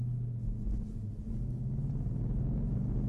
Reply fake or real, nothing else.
real